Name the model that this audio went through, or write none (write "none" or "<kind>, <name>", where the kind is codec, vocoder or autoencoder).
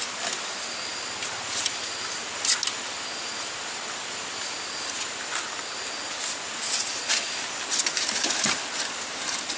none